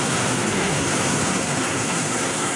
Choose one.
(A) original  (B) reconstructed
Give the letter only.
B